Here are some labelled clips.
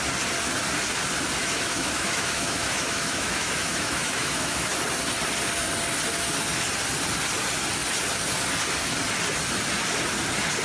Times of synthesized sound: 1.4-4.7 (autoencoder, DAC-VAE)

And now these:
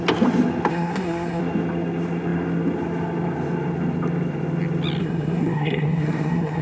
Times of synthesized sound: 0.7-1.4 (codec, SNAC); 5.0-6.6

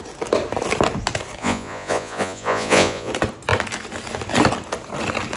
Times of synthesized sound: 1.4-3.1 (vocoder, Vocos)

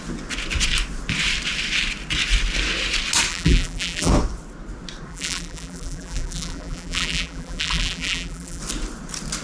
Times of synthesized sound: 3.3-4.1 (vocoder, BigVGAN v2); 5.1-8.6